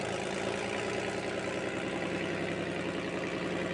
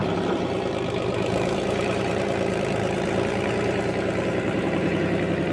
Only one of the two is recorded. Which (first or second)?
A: first